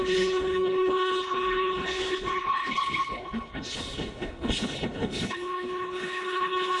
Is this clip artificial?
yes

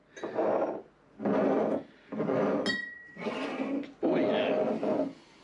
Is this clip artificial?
no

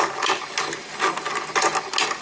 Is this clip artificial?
no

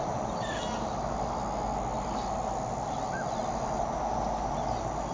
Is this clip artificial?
no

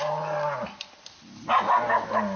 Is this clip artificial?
no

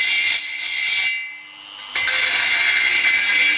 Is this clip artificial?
no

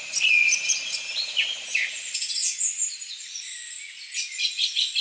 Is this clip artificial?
yes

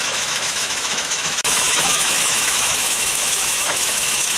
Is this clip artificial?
yes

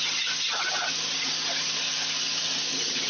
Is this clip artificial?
no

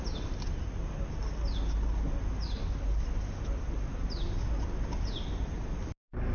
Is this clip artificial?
no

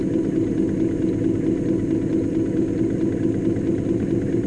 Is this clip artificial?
no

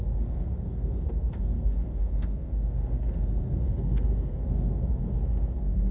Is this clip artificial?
yes